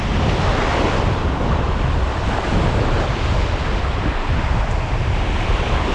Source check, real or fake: real